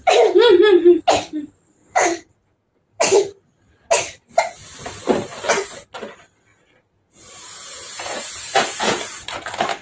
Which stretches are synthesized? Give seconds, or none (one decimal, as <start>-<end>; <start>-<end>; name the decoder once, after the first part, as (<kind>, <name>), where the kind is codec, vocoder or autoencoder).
1.8-3.0 (vocoder, Vocos); 6.5-9.3